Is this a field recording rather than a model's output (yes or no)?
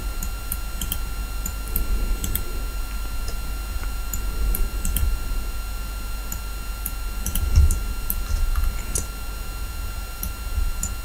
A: yes